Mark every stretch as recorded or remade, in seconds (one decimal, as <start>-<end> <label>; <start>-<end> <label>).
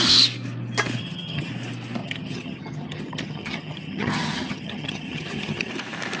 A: 0.0-1.0 recorded; 1.0-1.5 remade; 1.5-2.0 recorded; 2.0-5.7 remade; 5.7-6.2 recorded